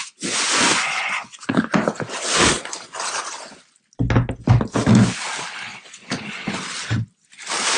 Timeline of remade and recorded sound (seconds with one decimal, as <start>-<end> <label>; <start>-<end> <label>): 0.0-1.7 remade; 1.7-5.7 recorded; 5.7-6.4 remade; 6.4-7.8 recorded